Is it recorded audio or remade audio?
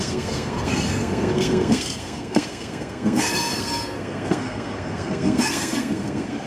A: remade